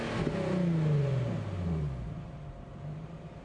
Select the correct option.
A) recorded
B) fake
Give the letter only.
A